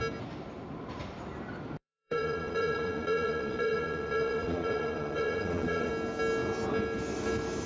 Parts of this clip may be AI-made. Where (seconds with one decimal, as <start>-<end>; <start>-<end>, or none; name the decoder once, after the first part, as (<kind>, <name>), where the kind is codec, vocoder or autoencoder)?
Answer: 1.8-5.9 (vocoder, Vocos)